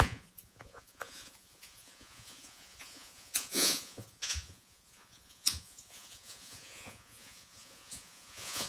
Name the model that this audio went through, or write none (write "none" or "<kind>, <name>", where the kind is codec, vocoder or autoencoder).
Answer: vocoder, Vocos